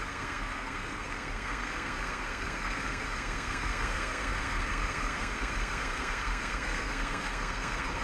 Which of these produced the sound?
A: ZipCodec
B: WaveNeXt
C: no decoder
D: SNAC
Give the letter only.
D